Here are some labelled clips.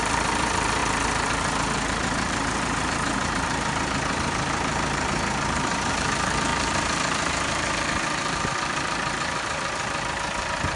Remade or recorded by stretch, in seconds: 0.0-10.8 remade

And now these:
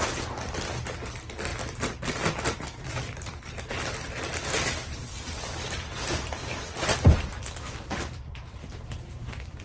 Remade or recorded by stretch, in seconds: 0.0-9.6 recorded

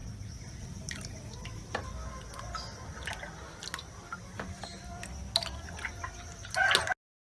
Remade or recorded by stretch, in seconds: 0.0-7.3 recorded